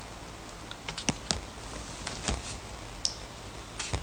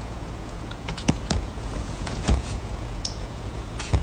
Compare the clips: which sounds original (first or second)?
first